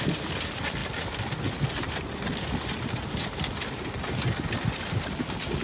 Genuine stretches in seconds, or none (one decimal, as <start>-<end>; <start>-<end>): 0.0-5.6